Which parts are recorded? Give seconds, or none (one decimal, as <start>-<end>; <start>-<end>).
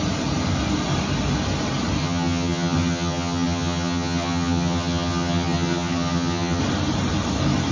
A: 0.0-2.0; 6.6-7.7